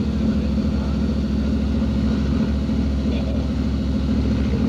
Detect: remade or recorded recorded